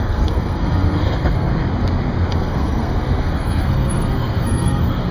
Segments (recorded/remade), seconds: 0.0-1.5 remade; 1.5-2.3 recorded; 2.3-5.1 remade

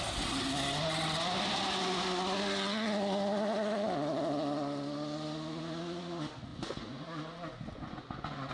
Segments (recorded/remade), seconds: 0.0-6.5 recorded; 6.5-8.5 remade

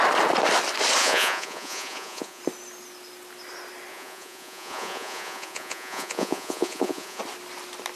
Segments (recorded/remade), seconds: 0.0-1.0 recorded; 1.0-2.4 remade; 2.4-3.9 recorded; 3.9-7.2 remade; 7.2-8.0 recorded

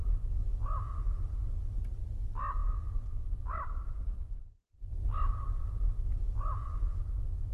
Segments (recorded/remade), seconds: 0.0-7.5 recorded

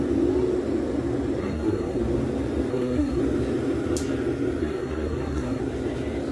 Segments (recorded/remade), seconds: 0.0-1.4 recorded; 1.4-2.0 remade; 2.0-2.7 recorded; 2.7-3.2 remade; 3.2-4.6 recorded; 4.6-5.6 remade; 5.6-6.3 recorded